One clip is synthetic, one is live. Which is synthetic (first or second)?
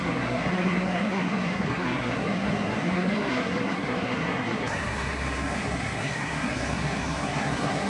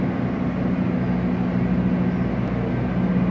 first